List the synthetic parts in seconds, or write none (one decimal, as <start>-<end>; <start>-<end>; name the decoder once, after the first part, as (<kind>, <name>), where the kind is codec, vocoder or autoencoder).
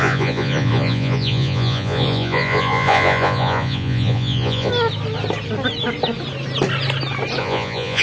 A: 0.0-4.7 (vocoder, Vocos); 7.4-8.0